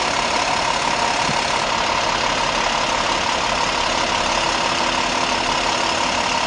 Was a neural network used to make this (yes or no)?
no